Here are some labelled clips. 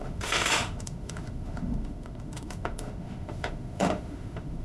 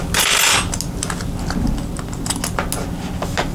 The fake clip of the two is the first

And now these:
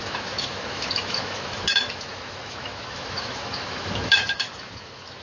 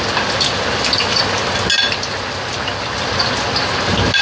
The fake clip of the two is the first